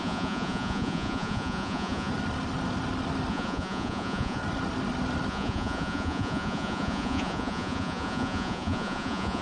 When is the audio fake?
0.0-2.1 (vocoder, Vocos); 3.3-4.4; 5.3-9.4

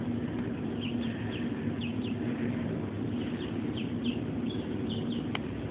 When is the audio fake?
1.9-5.3 (vocoder, BigVGAN v2)

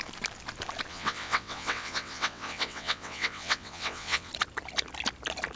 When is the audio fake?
0.9-4.3 (vocoder, WaveNeXt)

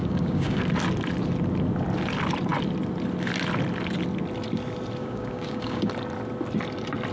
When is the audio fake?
0.0-0.6 (codec, DAC); 5.0-5.9